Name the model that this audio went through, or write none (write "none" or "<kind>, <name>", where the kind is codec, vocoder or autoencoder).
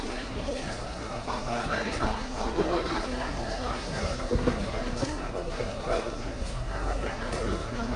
codec, SNAC